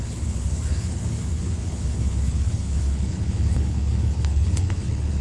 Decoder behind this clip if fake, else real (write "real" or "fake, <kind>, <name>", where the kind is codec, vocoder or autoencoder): fake, codec, HILCodec